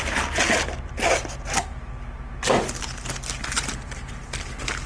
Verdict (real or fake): real